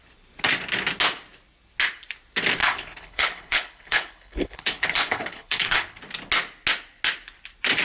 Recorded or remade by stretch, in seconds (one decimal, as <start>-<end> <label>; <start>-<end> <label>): 0.0-2.6 recorded; 2.6-6.0 remade; 6.0-7.8 recorded